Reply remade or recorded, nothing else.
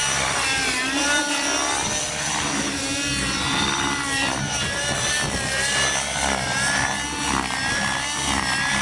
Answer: recorded